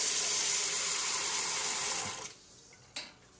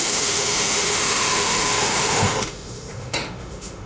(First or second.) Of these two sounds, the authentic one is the first